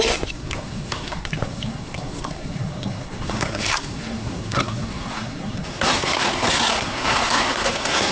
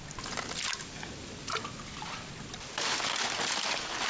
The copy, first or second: first